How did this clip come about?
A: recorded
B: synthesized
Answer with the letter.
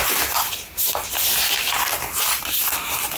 A